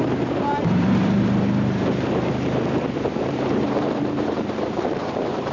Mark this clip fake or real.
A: fake